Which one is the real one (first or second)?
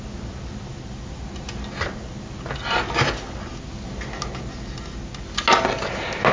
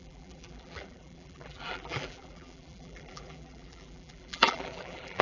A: first